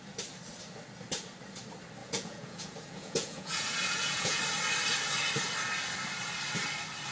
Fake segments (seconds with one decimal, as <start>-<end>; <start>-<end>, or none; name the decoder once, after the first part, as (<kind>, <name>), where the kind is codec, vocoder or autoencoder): 2.0-4.4 (vocoder, Vocos)